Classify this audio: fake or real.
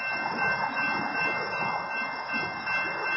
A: real